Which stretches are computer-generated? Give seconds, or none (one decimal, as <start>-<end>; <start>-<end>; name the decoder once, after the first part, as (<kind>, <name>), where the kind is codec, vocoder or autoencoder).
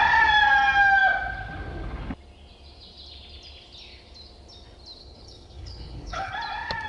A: 5.0-6.3 (codec, HILCodec)